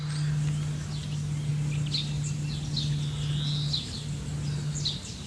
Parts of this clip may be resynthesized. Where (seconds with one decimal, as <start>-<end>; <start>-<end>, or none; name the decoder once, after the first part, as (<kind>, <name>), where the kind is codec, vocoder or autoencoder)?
none